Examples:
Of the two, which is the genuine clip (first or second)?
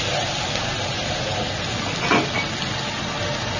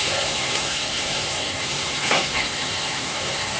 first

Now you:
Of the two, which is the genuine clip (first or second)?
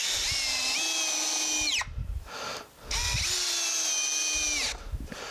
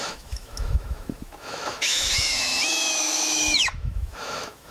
first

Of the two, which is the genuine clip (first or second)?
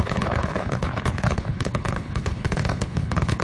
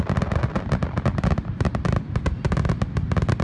second